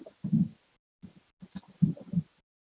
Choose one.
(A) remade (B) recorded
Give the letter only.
B